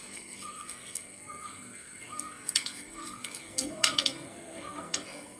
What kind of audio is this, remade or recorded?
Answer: remade